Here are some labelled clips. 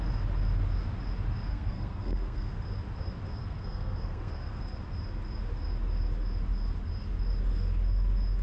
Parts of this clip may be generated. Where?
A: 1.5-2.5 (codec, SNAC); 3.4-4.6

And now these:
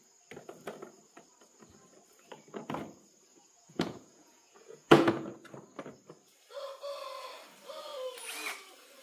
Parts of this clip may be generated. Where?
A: 3.3-5.3 (vocoder, Vocos)